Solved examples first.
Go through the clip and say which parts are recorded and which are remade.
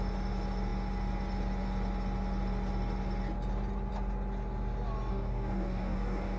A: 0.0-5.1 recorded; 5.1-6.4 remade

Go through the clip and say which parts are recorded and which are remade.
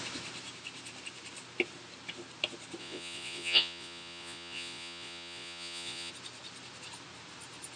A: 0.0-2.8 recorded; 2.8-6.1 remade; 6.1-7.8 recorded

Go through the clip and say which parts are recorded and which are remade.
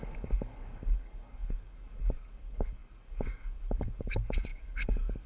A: 0.0-5.3 remade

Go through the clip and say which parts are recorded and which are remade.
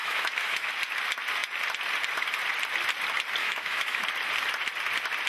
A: 0.0-0.7 remade; 0.7-3.4 recorded; 3.4-4.0 remade; 4.0-5.3 recorded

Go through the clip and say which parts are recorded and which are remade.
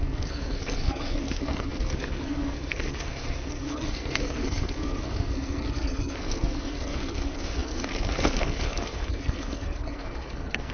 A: 0.0-10.7 remade